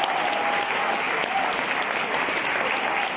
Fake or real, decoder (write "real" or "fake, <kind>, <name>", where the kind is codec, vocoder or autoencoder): real